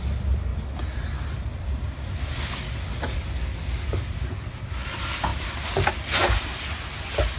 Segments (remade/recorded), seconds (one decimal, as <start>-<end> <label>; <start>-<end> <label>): 0.0-7.4 recorded